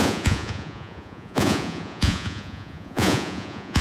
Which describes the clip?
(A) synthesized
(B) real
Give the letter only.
A